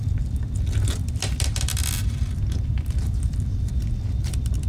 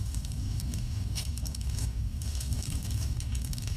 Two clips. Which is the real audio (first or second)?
first